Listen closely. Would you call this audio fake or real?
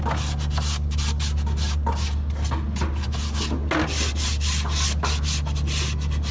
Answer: real